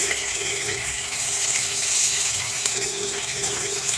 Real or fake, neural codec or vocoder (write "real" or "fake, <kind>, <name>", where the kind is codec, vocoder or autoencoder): fake, codec, SNAC